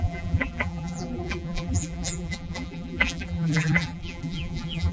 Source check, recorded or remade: remade